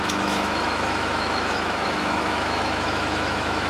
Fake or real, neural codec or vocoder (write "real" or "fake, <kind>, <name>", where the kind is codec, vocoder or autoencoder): fake, autoencoder, DAC-VAE